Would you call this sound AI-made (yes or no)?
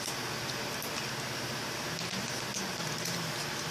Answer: no